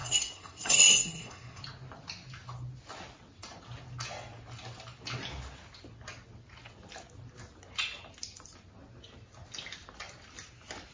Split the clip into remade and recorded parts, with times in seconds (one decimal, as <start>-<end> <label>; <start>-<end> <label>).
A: 0.0-1.6 remade; 1.6-10.9 recorded